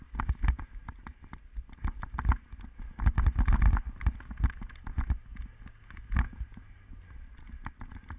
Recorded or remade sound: recorded